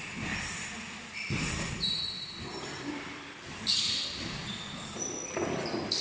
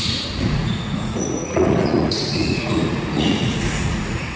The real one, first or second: first